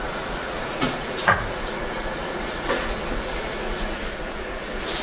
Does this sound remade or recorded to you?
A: remade